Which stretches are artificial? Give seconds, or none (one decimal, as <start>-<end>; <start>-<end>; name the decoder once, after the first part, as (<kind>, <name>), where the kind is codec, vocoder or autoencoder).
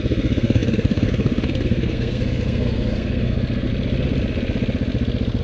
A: 0.0-3.7 (codec, SNAC)